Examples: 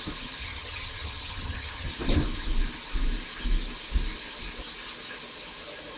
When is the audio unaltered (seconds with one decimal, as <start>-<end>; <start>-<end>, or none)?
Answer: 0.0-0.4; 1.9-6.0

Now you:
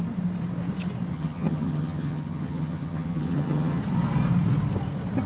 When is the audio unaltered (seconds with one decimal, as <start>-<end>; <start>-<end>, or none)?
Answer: 0.0-1.1; 3.8-5.3

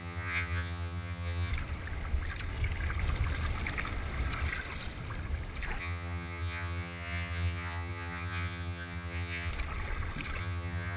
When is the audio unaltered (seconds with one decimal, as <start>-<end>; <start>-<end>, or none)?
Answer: 1.5-5.8; 9.5-10.4

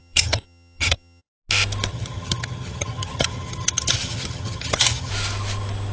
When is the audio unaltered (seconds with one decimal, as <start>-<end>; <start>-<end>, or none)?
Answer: 1.2-1.9; 5.1-5.9

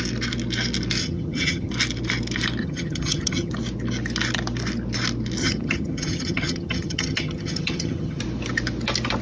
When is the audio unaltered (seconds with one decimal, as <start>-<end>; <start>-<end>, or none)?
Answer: 0.0-1.0; 1.7-2.6; 3.5-5.4; 8.2-9.2

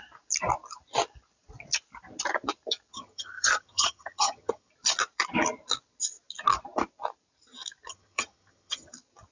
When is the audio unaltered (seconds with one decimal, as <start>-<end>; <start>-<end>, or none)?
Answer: 0.0-2.9; 4.7-7.9; 8.9-9.3